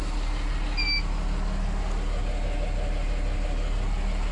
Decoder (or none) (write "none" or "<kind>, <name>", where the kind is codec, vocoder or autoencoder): none